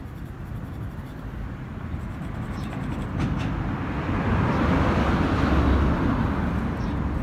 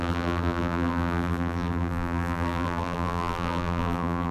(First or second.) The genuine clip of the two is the first